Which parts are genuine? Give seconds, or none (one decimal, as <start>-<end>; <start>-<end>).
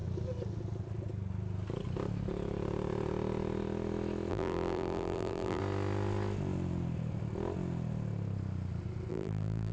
0.0-4.3; 5.6-9.1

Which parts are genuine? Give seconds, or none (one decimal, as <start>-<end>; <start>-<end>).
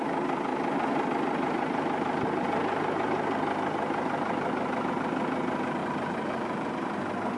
0.0-5.8; 6.7-7.4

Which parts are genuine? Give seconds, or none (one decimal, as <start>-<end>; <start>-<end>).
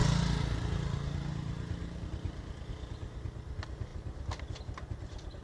0.0-5.4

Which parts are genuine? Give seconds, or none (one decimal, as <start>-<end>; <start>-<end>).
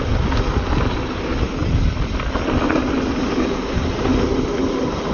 0.0-5.1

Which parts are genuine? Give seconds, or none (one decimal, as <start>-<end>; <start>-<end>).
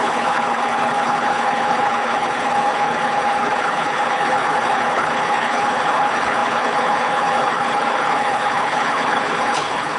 none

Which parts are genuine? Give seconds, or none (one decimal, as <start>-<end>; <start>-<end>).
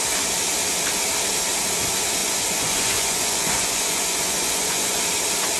0.0-2.2; 5.0-5.6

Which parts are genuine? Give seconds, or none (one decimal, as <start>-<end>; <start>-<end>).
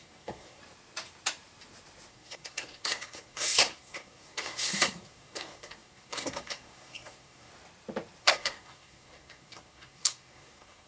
0.6-2.1; 7.5-8.2